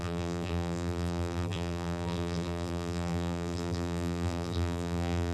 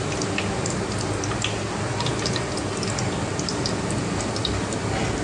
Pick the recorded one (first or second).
second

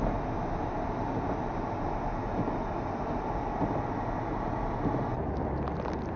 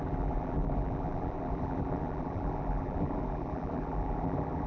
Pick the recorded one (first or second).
first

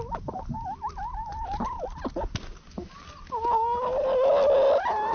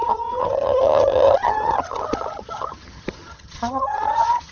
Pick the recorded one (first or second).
first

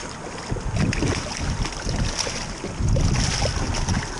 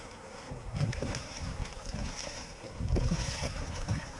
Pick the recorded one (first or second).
first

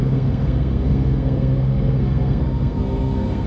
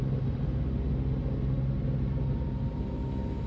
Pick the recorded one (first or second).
second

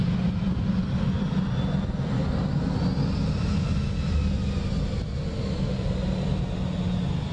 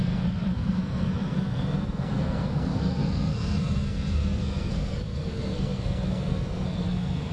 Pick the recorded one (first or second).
first